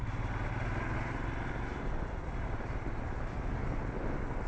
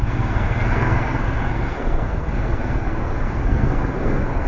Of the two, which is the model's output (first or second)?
second